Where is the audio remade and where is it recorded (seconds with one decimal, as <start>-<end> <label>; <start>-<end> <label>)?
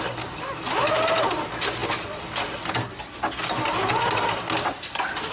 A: 0.0-5.3 recorded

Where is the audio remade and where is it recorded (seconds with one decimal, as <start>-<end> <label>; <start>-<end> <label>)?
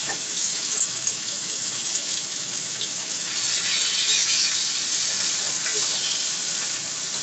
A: 0.0-3.3 remade; 3.3-7.2 recorded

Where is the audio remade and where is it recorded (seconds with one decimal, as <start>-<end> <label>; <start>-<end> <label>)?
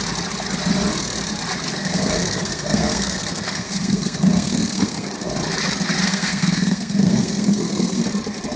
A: 0.0-1.7 recorded; 1.7-5.3 remade; 5.3-6.0 recorded; 6.0-8.0 remade; 8.0-8.6 recorded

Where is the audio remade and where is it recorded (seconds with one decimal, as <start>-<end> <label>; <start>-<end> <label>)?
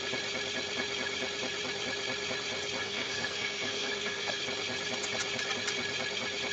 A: 0.0-2.8 recorded; 2.8-4.4 remade; 4.4-6.5 recorded